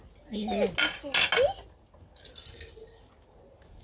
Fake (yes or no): no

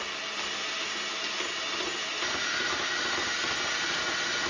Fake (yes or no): no